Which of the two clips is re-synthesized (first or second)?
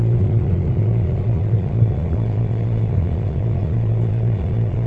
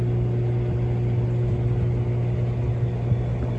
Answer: first